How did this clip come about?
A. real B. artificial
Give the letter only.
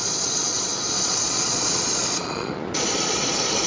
B